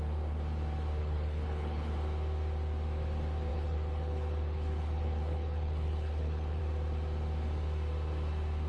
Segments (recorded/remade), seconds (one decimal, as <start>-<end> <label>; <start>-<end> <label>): 0.0-1.0 recorded; 1.0-1.9 remade; 1.9-3.5 recorded; 3.5-6.6 remade; 6.6-8.7 recorded